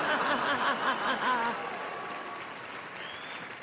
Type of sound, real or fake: real